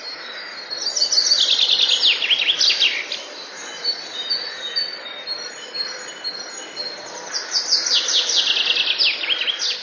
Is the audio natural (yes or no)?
yes